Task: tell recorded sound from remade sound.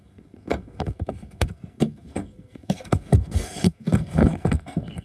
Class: remade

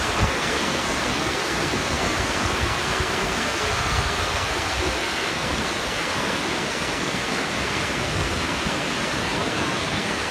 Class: remade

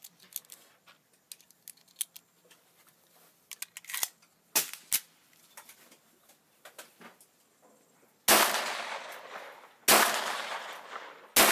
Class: recorded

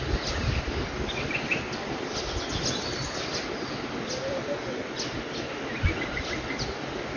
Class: recorded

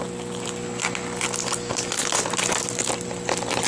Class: recorded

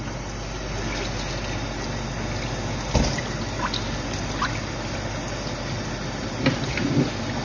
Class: recorded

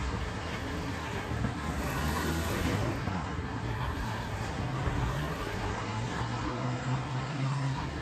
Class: remade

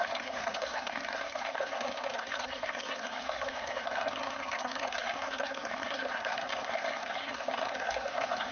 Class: remade